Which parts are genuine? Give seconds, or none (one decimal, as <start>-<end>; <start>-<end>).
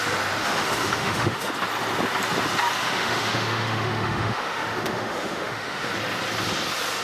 0.0-0.4; 1.5-2.8; 5.9-7.0